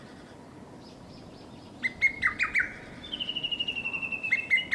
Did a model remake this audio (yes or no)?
no